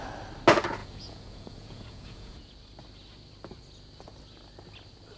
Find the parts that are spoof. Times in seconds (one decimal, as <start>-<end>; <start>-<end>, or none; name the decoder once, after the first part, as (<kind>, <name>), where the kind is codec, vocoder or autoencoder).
0.8-2.5 (vocoder, Vocos)